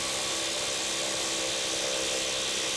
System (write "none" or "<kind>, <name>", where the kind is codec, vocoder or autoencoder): none